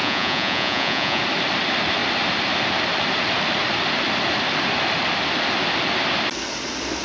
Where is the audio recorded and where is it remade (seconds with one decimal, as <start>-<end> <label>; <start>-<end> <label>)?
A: 0.0-1.2 remade; 1.2-7.0 recorded